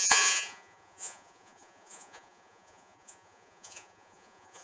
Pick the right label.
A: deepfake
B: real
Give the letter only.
A